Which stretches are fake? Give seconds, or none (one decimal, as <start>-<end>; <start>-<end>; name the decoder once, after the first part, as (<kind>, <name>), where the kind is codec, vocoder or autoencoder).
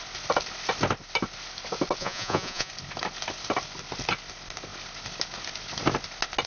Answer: 2.0-2.7 (vocoder, Vocos)